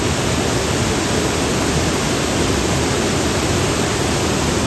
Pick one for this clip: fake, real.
real